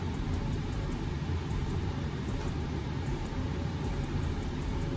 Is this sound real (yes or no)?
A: no